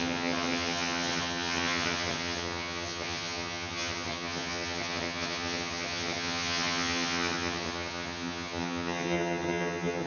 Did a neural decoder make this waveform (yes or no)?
yes